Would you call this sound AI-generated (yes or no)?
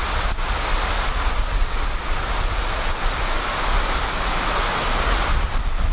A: no